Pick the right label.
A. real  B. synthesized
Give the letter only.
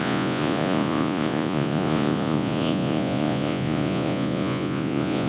B